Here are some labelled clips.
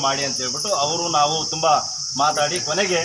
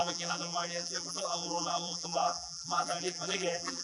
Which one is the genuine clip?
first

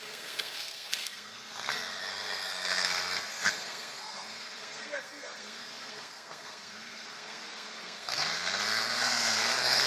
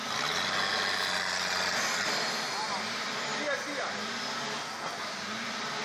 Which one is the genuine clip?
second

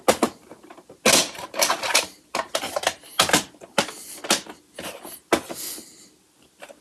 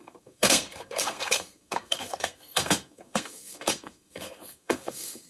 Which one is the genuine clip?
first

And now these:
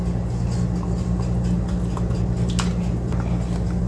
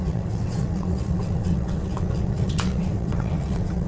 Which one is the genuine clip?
first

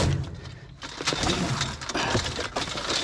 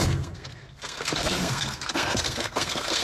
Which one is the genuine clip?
first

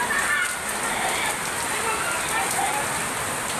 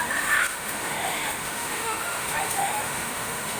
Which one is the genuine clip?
first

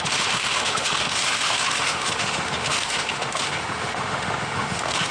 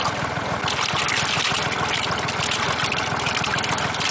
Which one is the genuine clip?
second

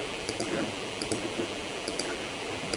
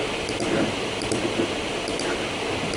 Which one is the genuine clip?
second